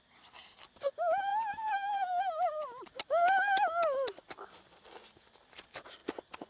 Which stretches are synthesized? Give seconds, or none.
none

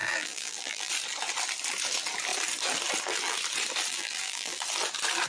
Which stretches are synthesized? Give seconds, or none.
0.0-0.9 (vocoder, BigVGAN v2); 3.9-4.6

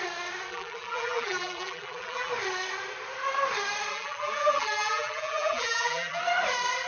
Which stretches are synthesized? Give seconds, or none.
0.5-2.3 (vocoder, BigVGAN v2); 3.9-6.2

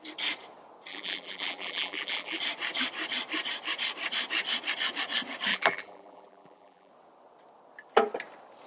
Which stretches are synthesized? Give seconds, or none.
0.9-2.4 (vocoder, BigVGAN v2); 5.5-6.9

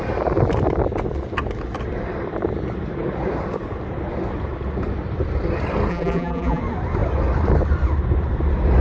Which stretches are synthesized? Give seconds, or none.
5.9-6.6 (vocoder, BigVGAN v2)